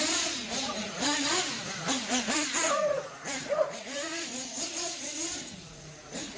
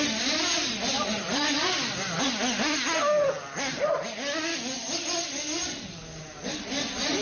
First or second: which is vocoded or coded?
first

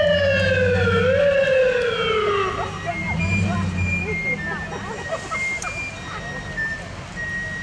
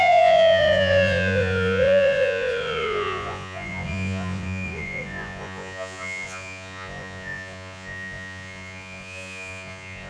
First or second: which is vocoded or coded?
second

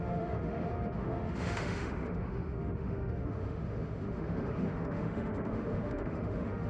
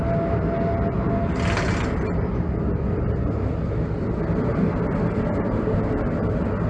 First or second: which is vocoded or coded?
first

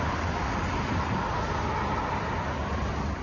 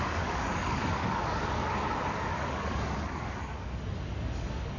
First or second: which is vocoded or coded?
second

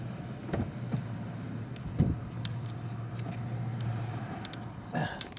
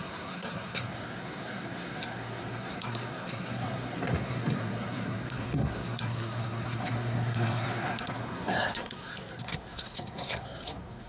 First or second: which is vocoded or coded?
second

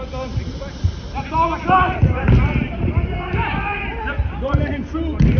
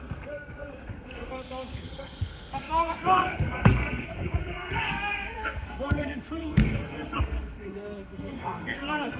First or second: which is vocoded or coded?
second